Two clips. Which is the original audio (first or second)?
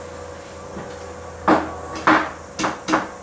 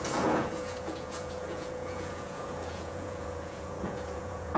first